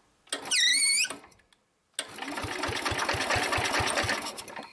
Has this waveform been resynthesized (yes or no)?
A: no